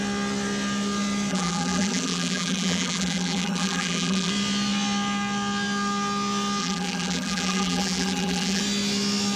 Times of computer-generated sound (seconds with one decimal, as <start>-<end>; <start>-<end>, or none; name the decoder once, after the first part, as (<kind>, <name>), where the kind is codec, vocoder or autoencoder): 1.3-4.3 (vocoder, BigVGAN v2); 6.6-8.6